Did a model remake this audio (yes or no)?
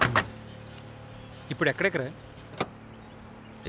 no